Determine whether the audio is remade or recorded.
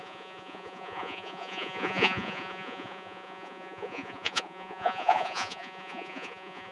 remade